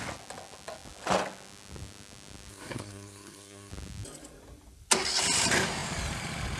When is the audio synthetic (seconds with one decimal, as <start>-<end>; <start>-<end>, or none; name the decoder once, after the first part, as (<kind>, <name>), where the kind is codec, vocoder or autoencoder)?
2.5-3.7 (codec, SNAC)